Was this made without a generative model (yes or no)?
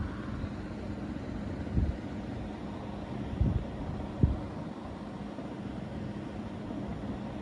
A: yes